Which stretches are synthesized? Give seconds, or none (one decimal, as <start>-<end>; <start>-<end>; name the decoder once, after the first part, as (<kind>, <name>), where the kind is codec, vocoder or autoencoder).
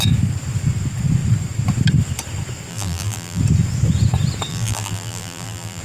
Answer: 2.7-3.4 (vocoder, BigVGAN v2); 4.5-5.8